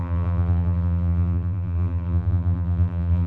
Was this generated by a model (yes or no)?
yes